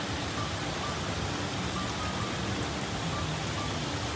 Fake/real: real